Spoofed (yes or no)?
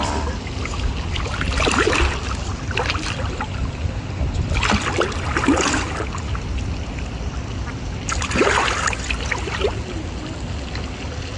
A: no